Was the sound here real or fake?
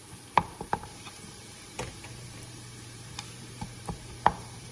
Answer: fake